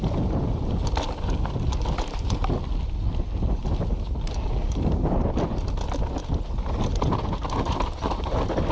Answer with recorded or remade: recorded